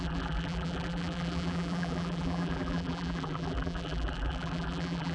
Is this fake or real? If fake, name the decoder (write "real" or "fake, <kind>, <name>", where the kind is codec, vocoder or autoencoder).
fake, vocoder, BigVGAN v2